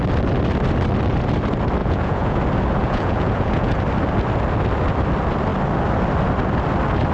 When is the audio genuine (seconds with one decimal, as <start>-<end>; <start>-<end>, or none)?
0.0-1.8; 2.4-2.8; 3.7-7.1